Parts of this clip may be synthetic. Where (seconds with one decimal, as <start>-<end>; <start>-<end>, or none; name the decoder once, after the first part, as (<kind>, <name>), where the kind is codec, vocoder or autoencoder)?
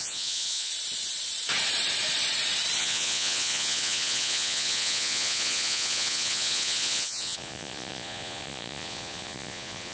0.0-0.7 (vocoder, Vocos); 2.8-9.9